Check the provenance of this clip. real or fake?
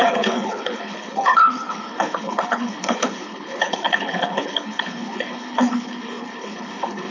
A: fake